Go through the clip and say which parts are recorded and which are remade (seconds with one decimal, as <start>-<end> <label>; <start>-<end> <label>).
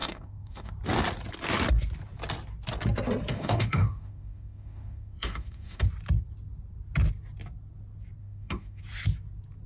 0.0-0.7 remade; 0.7-3.3 recorded; 3.3-5.9 remade; 5.9-8.2 recorded; 8.2-8.8 remade; 8.8-9.7 recorded